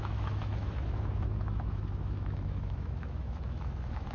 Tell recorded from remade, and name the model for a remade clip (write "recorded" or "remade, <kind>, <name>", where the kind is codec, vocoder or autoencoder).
remade, autoencoder, DAC-VAE